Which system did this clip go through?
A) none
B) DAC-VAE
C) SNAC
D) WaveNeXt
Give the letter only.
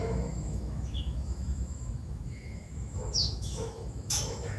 B